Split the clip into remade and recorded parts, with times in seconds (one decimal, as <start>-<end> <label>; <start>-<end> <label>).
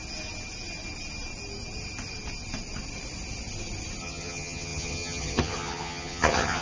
0.0-4.0 recorded; 4.0-6.6 remade